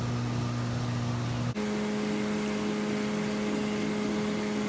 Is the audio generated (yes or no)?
no